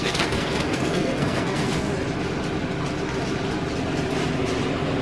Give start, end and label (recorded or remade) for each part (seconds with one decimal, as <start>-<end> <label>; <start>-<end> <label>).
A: 0.0-1.9 remade; 1.9-5.0 recorded